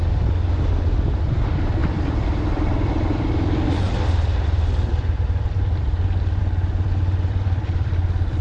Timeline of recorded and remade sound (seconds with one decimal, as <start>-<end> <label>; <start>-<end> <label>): 0.0-1.2 recorded; 1.2-8.4 remade